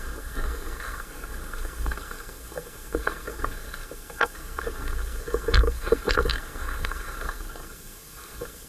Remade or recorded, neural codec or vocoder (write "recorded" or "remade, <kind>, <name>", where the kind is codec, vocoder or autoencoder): remade, codec, SNAC